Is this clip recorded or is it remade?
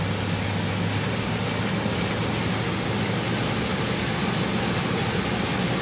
recorded